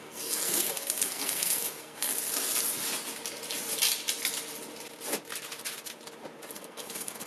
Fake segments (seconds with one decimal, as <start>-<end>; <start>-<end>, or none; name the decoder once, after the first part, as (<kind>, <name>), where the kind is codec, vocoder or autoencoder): 0.0-2.1 (codec, SNAC); 6.5-7.3